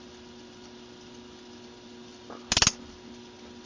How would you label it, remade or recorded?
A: recorded